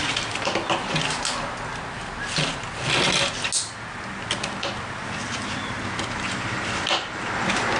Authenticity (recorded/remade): recorded